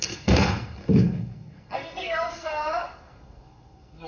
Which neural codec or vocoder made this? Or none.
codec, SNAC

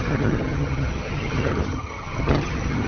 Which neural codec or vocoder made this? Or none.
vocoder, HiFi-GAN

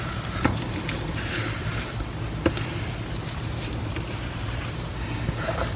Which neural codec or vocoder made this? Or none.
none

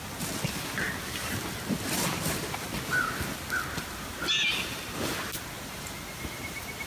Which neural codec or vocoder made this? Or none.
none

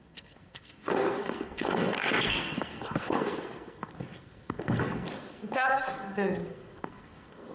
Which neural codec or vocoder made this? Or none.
codec, SNAC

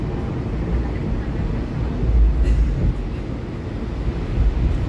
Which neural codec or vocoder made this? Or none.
none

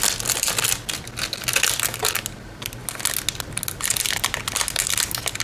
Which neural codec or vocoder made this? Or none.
none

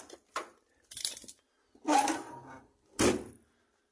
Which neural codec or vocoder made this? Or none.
none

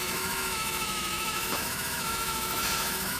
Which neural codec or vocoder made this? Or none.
autoencoder, DAC-VAE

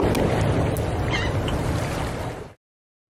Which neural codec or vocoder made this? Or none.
none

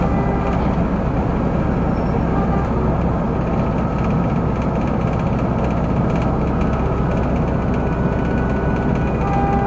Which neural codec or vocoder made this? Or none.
none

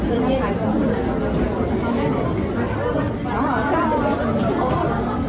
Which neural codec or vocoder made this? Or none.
none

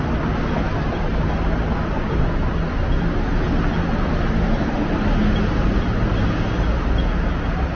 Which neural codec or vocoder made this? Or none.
none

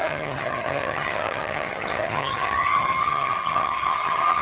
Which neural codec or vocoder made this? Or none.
vocoder, HiFi-GAN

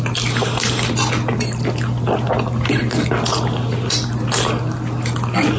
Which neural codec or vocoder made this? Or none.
none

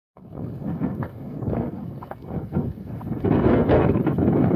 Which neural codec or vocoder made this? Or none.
codec, SNAC